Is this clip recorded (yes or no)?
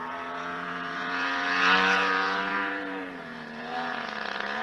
no